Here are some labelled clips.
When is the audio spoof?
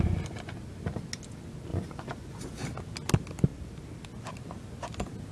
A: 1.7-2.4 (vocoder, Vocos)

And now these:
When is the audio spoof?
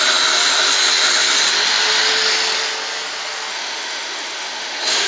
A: 3.5-5.1 (autoencoder, DAC-VAE)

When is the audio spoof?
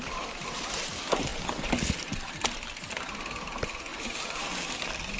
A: none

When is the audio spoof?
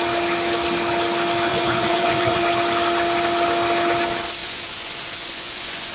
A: 1.5-2.4 (vocoder, Vocos); 4.4-5.9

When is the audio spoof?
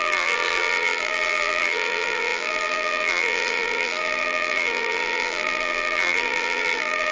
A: 0.0-7.1 (vocoder, BigVGAN v2)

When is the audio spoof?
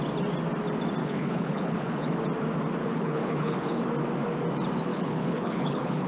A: 1.0-2.2 (codec, HILCodec); 2.8-3.8; 4.9-6.1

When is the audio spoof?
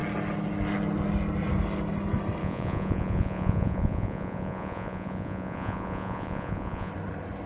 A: 2.4-6.9 (vocoder, Vocos)